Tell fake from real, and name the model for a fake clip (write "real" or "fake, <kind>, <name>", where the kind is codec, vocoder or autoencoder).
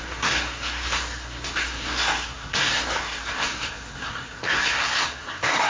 fake, codec, SNAC